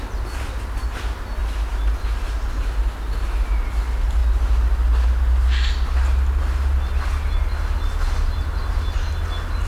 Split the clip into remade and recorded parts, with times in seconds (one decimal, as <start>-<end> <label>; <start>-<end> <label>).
0.0-9.7 recorded